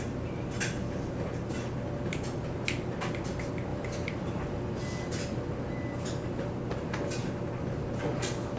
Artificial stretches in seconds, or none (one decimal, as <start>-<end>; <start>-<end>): 3.7-6.5

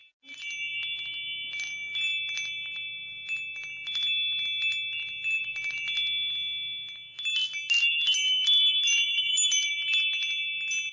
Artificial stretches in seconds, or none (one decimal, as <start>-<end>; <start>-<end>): 8.9-9.7

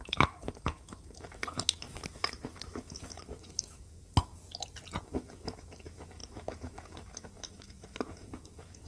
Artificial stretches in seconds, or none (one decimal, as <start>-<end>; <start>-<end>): 0.0-4.4; 5.0-8.9

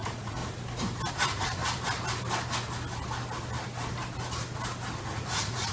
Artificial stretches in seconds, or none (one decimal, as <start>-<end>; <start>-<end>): 0.0-0.4; 1.1-1.6; 5.0-5.7

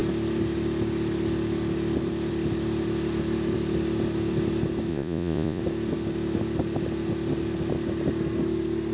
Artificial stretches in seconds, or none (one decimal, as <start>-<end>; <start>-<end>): 4.9-5.6